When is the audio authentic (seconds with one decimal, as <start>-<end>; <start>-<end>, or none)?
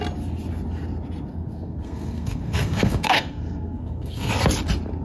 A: 0.0-1.3; 4.3-5.0